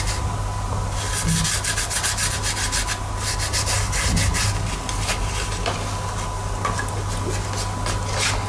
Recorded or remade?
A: recorded